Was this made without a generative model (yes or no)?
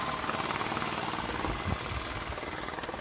yes